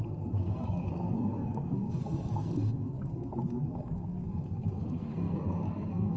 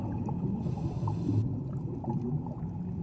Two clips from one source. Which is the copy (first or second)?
first